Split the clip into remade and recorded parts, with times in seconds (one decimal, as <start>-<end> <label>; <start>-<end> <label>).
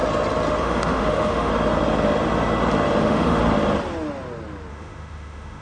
0.0-0.6 recorded; 0.6-1.5 remade; 1.5-3.0 recorded; 3.0-3.4 remade; 3.4-4.7 recorded; 4.7-5.6 remade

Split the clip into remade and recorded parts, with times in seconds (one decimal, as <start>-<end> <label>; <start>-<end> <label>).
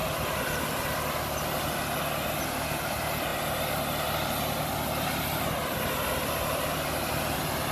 0.0-7.7 recorded